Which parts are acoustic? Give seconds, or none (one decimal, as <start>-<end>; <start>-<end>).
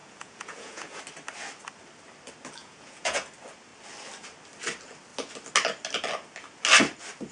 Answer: 1.0-2.6; 3.3-7.3